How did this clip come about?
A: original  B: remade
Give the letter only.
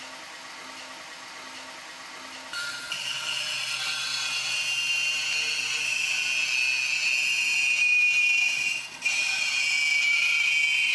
A